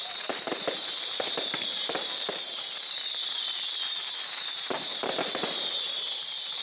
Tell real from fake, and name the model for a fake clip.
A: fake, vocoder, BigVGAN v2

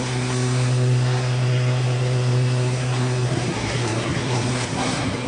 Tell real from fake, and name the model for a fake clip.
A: fake, codec, SNAC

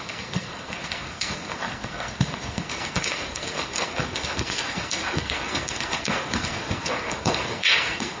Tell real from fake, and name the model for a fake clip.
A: fake, codec, SNAC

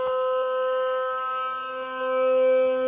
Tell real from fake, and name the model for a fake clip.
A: real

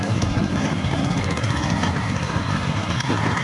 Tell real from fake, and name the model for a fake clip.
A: fake, codec, SNAC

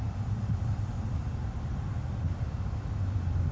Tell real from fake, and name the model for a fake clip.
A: real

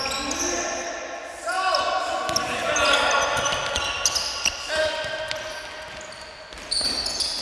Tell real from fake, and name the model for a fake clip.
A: real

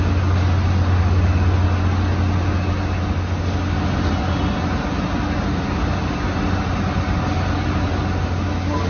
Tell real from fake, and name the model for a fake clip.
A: real